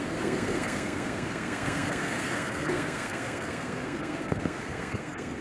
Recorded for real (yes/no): no